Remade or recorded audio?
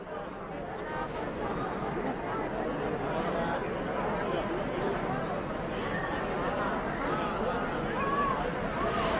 recorded